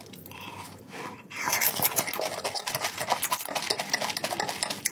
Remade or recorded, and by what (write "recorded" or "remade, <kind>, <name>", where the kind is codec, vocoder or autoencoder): recorded